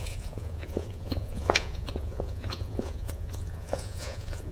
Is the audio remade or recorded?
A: remade